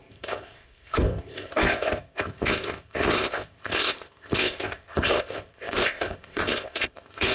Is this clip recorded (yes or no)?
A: no